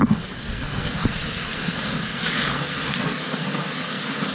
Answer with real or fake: fake